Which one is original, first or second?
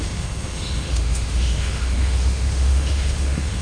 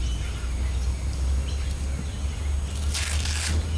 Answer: second